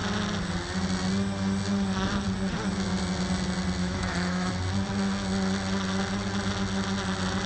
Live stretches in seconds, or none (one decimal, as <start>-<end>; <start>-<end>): 0.0-3.8; 4.5-7.5